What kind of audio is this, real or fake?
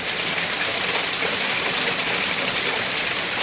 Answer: real